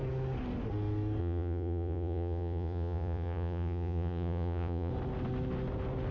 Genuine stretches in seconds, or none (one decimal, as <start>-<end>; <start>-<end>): 0.0-1.2; 4.9-6.1